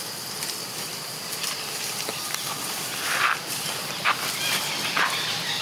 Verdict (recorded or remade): recorded